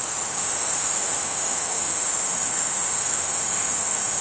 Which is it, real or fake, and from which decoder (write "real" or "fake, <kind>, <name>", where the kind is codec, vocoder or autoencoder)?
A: fake, autoencoder, DAC-VAE